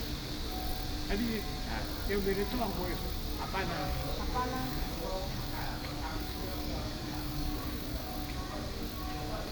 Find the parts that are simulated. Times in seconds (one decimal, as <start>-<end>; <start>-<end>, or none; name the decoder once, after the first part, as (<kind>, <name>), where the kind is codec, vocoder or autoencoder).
3.8-8.1 (codec, DAC)